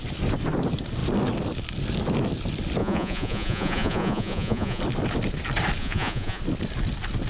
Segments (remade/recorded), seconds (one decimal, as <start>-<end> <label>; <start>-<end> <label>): 0.0-2.8 recorded; 2.8-4.8 remade; 4.8-5.8 recorded; 5.8-6.4 remade; 6.4-7.3 recorded